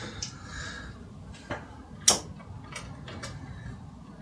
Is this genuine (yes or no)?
yes